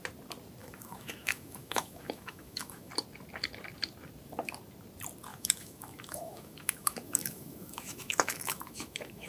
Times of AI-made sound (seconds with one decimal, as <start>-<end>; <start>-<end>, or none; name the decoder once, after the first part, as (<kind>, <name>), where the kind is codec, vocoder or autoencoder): 0.6-2.9 (autoencoder, DAC-VAE); 5.3-9.3